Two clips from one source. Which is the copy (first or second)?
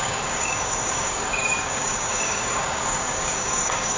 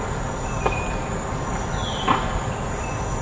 first